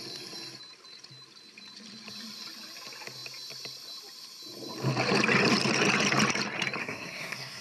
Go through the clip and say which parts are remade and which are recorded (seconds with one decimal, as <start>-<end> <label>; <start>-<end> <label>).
0.0-6.8 recorded; 6.8-7.6 remade